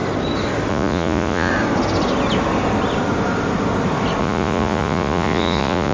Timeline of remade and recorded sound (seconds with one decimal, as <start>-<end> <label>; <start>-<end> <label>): 0.0-0.7 recorded; 0.7-1.5 remade; 1.5-4.2 recorded; 4.2-5.9 remade